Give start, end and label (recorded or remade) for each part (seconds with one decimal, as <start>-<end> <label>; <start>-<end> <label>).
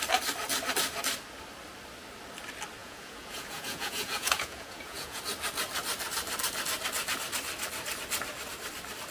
0.0-2.8 recorded; 2.8-5.2 remade; 5.2-9.1 recorded